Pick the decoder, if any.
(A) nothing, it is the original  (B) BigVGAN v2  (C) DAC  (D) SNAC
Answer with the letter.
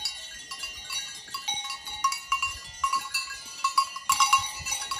A